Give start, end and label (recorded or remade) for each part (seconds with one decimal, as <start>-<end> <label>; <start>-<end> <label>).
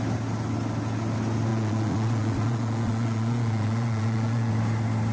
0.0-1.5 recorded; 1.5-4.5 remade; 4.5-5.1 recorded